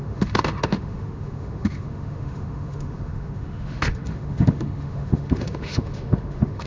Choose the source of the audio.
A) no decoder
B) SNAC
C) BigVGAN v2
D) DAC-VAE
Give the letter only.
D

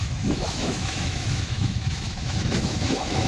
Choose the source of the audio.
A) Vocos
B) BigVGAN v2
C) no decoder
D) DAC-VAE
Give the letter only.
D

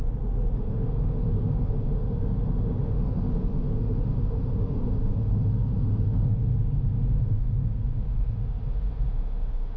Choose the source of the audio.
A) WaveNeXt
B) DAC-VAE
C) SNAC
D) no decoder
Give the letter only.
B